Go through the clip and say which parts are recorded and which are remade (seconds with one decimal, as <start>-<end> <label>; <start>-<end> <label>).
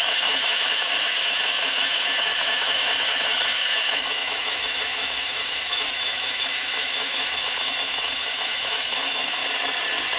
0.0-9.4 remade; 9.4-10.2 recorded